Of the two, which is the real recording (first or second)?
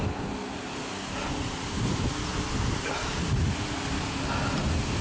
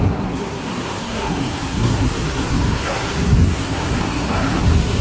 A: first